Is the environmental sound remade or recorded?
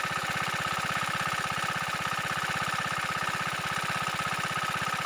recorded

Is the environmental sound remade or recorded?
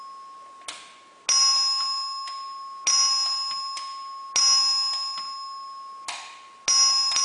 recorded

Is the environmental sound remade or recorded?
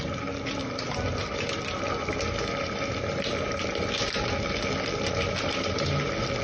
recorded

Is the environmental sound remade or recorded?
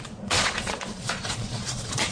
remade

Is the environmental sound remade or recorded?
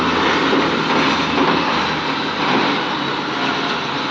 recorded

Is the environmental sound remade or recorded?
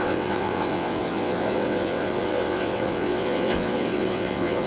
remade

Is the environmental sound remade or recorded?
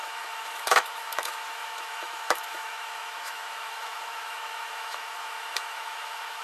remade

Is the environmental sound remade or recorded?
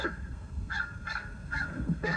remade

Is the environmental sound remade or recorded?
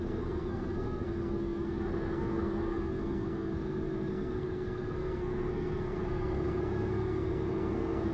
remade